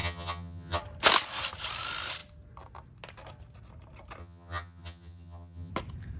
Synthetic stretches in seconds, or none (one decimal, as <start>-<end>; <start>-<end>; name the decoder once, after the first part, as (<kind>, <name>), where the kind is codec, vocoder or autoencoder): 0.0-0.8 (vocoder, HiFi-GAN); 4.2-5.7